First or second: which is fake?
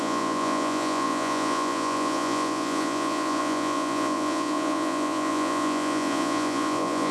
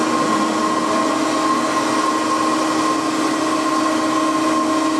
first